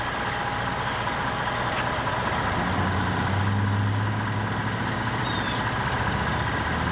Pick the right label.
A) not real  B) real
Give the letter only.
B